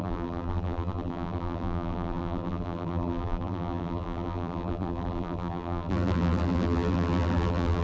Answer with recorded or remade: remade